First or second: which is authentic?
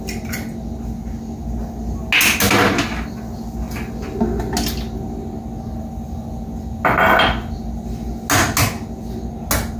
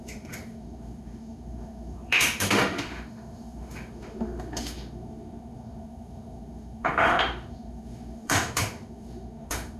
first